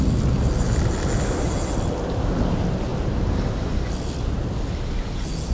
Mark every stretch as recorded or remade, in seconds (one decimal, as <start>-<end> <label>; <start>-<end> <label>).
0.0-5.5 recorded